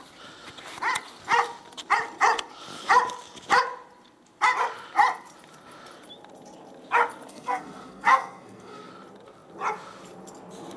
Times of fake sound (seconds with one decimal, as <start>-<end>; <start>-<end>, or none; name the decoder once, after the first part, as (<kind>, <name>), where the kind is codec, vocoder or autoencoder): 7.3-8.9 (codec, SNAC)